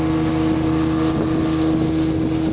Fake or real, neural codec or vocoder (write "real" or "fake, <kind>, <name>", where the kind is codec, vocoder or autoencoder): real